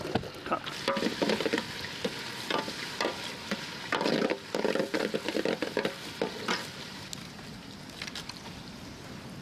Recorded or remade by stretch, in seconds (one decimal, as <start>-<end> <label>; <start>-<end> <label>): 0.0-9.4 recorded